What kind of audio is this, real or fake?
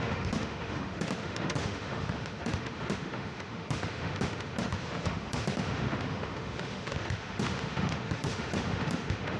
fake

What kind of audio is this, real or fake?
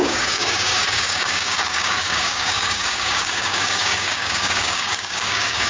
fake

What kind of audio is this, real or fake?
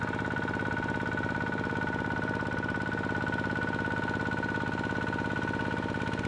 real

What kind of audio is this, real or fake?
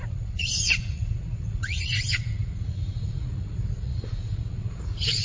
fake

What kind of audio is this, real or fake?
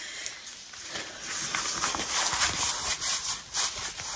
real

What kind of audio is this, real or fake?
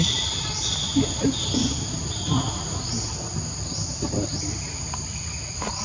real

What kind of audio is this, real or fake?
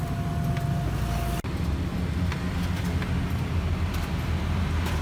real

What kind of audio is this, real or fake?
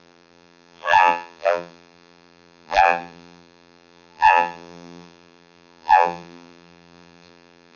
fake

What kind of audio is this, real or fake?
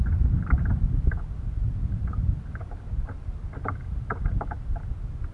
real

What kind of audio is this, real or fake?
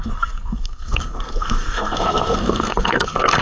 fake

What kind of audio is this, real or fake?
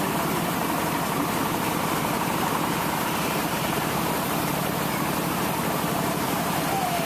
fake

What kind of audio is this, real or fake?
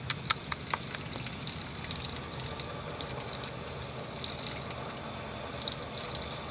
real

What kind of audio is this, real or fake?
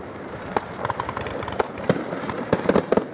fake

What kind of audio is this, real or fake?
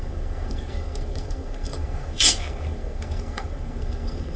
fake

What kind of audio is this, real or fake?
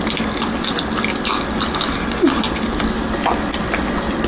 real